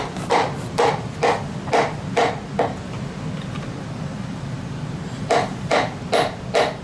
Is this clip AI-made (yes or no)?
no